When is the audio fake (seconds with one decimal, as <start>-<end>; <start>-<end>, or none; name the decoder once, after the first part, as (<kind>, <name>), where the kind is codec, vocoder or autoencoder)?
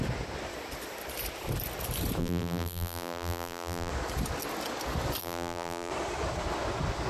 2.2-3.9 (vocoder, BigVGAN v2); 5.2-5.9